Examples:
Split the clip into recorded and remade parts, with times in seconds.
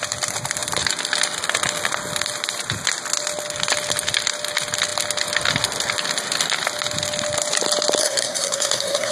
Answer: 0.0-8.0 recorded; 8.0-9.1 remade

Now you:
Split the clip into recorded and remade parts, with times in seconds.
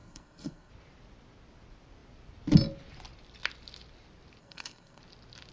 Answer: 0.0-0.7 remade; 0.7-4.4 recorded; 4.4-5.0 remade; 5.0-5.5 recorded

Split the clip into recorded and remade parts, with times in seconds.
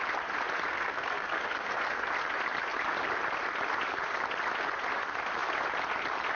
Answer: 0.0-0.7 recorded; 0.7-2.1 remade; 2.1-6.3 recorded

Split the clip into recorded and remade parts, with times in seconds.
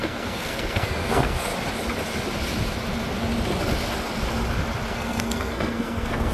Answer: 0.0-1.5 remade; 1.5-4.9 recorded; 4.9-6.3 remade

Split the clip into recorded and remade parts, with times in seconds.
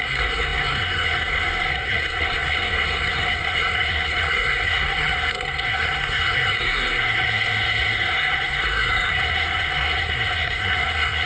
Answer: 0.0-11.3 remade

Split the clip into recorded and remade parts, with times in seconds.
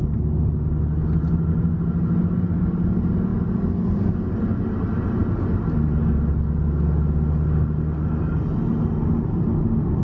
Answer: 0.0-10.0 recorded